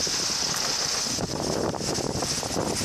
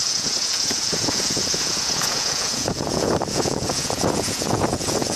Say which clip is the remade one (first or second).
second